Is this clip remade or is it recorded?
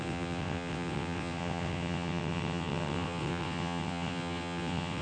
remade